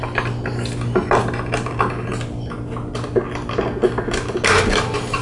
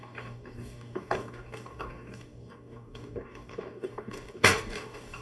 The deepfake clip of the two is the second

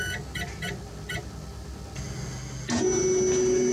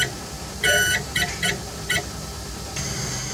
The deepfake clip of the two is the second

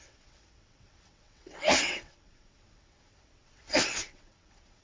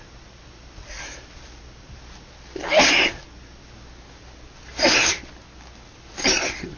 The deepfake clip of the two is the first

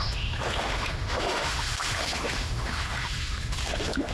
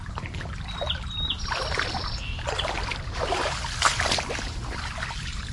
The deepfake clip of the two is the first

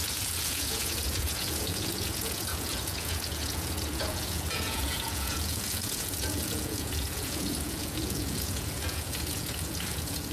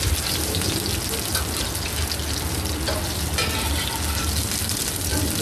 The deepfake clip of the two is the first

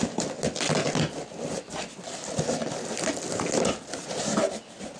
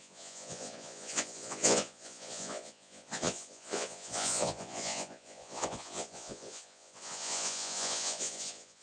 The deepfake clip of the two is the second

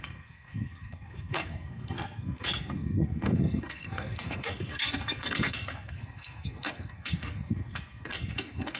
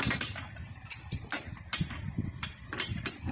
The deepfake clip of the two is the first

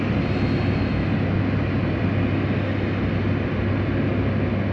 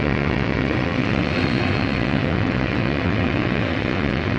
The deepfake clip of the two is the second